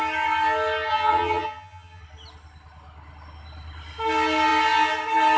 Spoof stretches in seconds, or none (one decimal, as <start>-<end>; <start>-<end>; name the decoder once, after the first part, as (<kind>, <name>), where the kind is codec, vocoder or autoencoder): 0.9-2.0 (vocoder, HiFi-GAN)